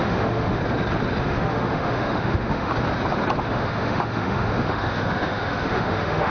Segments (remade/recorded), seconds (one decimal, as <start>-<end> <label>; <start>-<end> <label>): 0.0-0.6 remade; 0.6-1.2 recorded; 1.2-2.7 remade; 2.7-3.4 recorded; 3.4-6.3 remade